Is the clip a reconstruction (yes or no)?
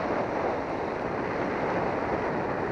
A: no